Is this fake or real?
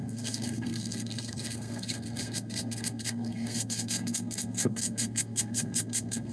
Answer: fake